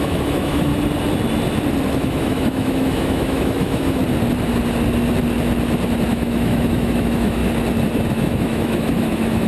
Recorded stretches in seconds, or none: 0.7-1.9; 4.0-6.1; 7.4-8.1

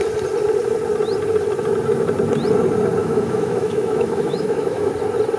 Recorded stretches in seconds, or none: 0.0-3.0; 4.9-5.4

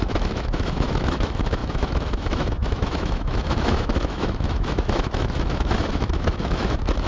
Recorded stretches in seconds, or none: none

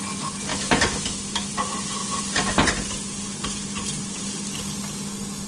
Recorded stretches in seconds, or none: 0.0-0.5; 1.5-5.5

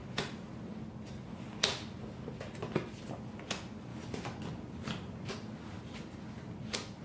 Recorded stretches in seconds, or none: 0.0-7.0

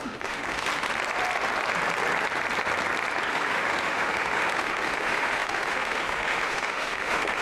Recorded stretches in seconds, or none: 0.7-3.3